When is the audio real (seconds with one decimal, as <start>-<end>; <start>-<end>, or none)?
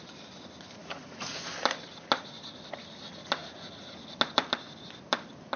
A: 0.0-0.8; 1.4-3.4; 4.0-5.6